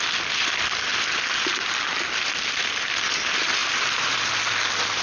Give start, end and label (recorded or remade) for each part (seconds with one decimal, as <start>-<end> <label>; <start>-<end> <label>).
0.0-3.6 recorded; 3.6-4.2 remade; 4.2-5.0 recorded